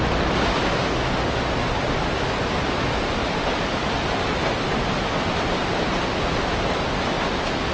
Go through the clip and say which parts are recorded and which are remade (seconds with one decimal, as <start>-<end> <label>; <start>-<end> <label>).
0.0-3.2 recorded; 3.2-4.5 remade; 4.5-7.7 recorded